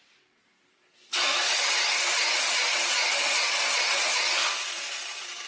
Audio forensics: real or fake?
fake